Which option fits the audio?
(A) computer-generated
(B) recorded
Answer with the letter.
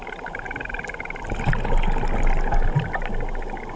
B